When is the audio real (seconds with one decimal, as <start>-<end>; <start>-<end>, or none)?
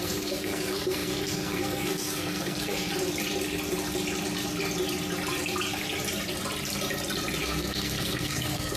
2.9-7.4